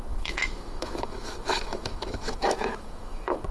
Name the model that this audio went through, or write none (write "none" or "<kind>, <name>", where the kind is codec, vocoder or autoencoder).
autoencoder, DAC-VAE